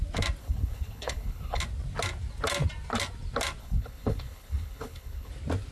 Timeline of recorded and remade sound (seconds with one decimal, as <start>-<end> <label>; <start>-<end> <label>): 0.0-0.4 recorded; 0.4-1.6 remade; 1.6-3.6 recorded; 3.6-5.3 remade; 5.3-5.7 recorded